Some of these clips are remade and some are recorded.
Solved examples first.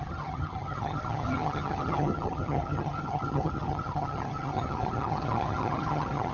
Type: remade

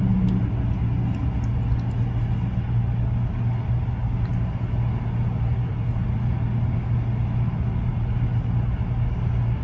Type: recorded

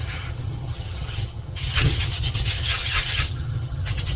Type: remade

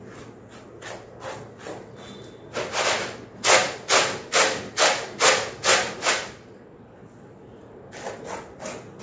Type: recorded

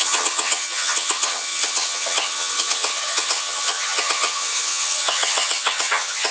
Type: remade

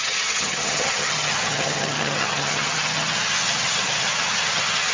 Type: remade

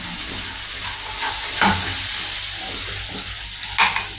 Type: recorded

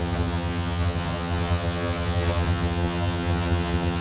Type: remade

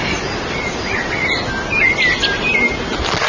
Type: recorded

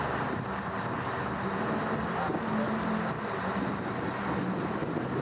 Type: recorded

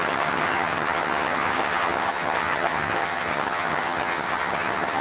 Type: remade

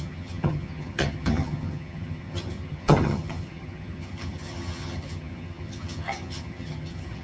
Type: remade